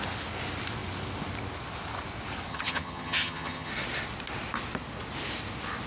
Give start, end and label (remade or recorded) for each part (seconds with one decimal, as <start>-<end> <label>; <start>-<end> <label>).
0.0-2.5 recorded; 2.5-3.7 remade; 3.7-5.9 recorded